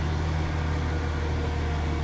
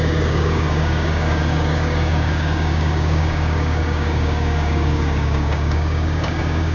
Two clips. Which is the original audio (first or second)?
first